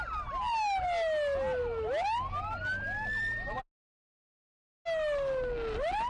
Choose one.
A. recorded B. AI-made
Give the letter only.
A